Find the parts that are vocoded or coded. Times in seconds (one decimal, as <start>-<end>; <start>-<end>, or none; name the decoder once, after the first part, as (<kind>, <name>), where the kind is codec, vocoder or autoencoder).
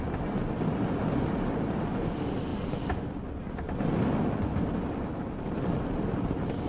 none